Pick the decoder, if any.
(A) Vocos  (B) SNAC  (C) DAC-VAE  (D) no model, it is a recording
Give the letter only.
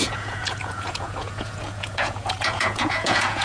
A